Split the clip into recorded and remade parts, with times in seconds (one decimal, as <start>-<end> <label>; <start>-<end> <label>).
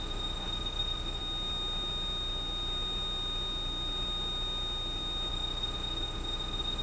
0.0-1.2 remade; 1.2-5.3 recorded; 5.3-6.8 remade